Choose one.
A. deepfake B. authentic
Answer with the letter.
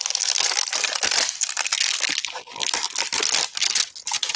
B